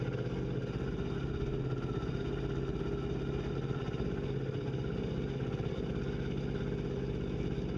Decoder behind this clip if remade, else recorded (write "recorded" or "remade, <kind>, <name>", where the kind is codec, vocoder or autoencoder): recorded